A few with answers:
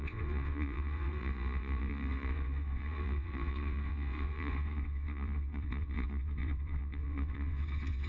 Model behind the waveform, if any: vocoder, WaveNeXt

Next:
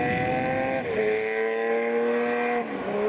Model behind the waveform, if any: none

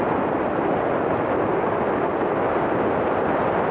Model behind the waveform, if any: none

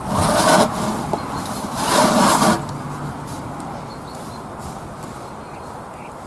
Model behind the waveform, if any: none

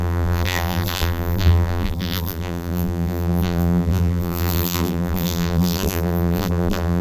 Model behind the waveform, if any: vocoder, BigVGAN v2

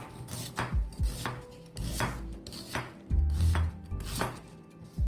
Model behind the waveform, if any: none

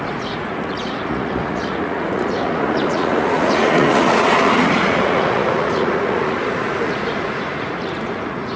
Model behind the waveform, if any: vocoder, Vocos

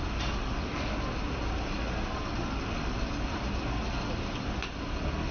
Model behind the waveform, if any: none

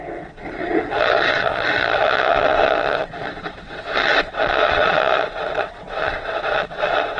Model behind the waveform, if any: vocoder, WaveNeXt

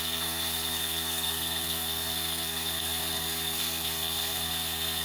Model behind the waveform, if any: codec, SNAC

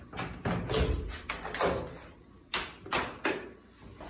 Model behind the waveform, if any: none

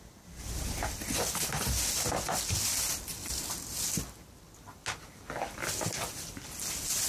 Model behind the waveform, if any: none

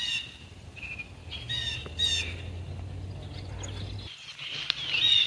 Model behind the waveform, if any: none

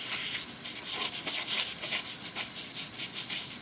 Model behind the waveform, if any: none